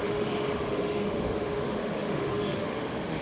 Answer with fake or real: fake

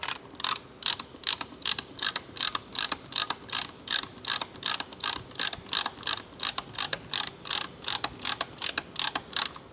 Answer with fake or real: real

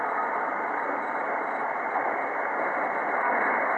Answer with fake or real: real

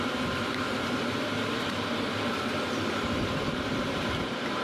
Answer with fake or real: fake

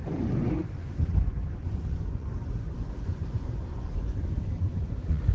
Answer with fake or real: fake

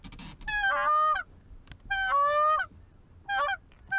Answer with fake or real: real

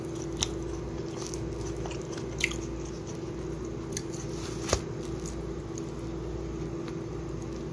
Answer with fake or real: real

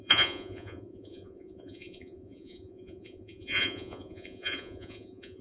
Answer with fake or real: fake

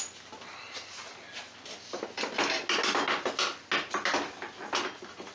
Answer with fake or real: real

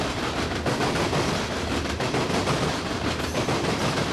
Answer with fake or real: fake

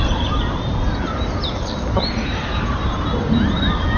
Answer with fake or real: real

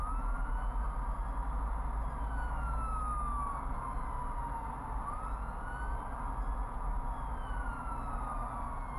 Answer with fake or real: real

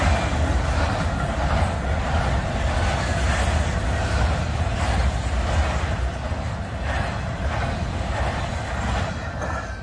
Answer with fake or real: real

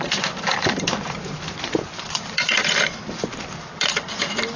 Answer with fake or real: fake